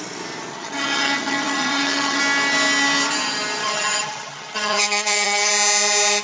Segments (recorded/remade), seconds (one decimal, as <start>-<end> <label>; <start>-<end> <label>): 0.0-0.5 recorded; 0.5-2.2 remade; 2.2-3.6 recorded; 3.6-5.5 remade; 5.5-6.2 recorded